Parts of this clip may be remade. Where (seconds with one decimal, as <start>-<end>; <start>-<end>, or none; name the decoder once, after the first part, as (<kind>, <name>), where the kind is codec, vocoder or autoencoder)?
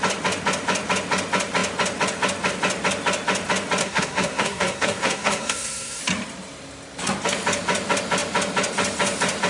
3.8-6.0 (codec, SNAC)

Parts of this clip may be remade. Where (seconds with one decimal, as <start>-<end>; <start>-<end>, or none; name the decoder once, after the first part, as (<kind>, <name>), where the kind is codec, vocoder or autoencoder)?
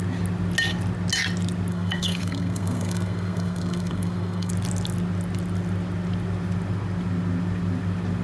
1.7-4.5 (codec, SNAC)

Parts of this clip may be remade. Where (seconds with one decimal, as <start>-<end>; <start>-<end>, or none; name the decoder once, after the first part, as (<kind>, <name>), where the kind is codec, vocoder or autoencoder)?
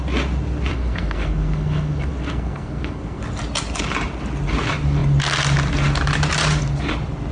0.7-3.2 (codec, SNAC)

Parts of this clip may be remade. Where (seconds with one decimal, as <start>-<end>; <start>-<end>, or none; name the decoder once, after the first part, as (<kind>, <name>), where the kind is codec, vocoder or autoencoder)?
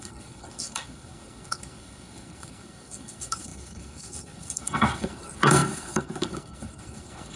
0.0-7.4 (codec, SNAC)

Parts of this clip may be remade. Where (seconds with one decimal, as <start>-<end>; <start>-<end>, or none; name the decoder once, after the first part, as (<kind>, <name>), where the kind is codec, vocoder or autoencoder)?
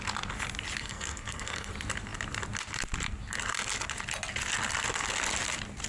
0.8-1.7 (codec, SNAC)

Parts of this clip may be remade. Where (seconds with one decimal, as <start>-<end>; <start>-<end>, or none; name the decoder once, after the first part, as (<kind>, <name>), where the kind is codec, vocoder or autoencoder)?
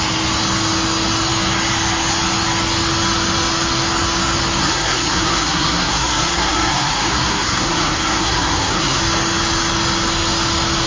4.6-9.0 (codec, SNAC)